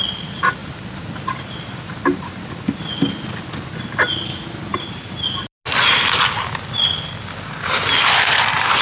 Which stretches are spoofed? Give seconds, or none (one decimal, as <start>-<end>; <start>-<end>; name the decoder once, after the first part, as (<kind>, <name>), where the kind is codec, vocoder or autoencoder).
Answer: 0.6-2.5 (vocoder, BigVGAN v2)